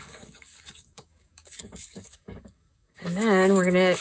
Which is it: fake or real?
fake